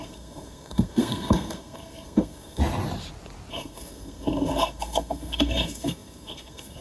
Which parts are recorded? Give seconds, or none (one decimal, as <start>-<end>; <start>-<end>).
2.6-3.5

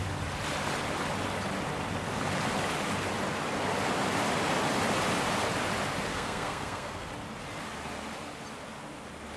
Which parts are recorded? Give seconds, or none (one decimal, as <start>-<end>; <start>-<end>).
0.0-6.1; 7.1-9.4

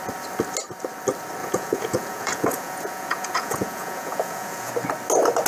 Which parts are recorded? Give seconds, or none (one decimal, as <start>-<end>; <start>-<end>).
0.0-1.4; 4.7-5.5

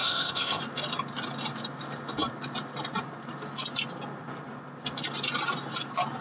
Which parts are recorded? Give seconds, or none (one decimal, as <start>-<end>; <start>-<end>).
0.6-6.2

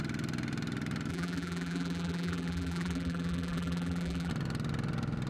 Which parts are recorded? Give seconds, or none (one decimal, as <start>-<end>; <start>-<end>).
0.0-1.1; 4.3-5.3

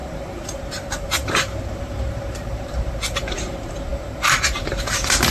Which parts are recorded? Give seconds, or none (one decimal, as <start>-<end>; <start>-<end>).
none